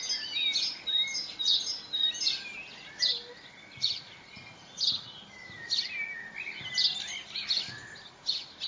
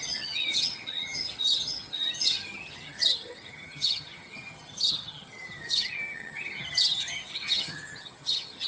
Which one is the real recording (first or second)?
first